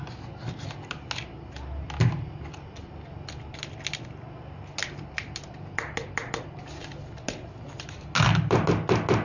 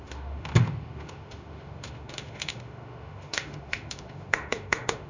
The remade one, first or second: second